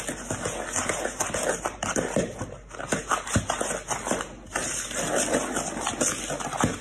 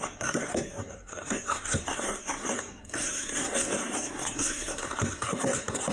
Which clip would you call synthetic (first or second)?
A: second